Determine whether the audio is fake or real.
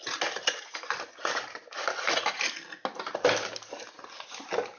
real